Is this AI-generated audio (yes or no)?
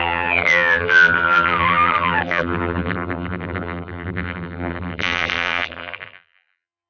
yes